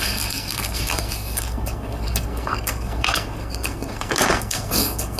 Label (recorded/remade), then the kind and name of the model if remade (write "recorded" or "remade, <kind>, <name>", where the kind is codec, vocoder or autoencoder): remade, codec, SNAC